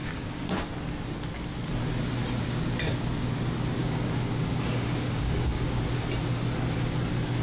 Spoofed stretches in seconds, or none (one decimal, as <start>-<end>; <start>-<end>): 0.0-0.7; 3.8-5.8